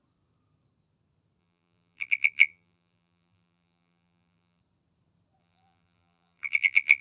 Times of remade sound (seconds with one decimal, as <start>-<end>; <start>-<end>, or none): 1.4-4.6; 5.4-7.0